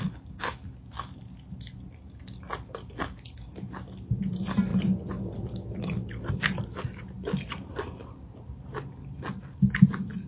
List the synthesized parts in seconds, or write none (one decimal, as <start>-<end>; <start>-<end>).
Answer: none